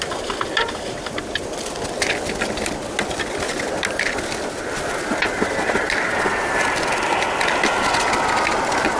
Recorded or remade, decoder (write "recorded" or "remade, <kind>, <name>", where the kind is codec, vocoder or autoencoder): recorded